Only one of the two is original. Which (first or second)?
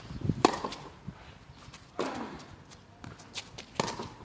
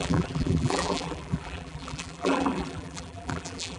first